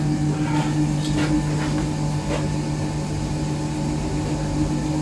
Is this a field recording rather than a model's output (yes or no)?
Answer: yes